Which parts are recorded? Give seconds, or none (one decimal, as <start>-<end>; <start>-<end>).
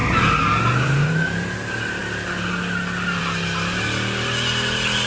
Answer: 0.0-5.1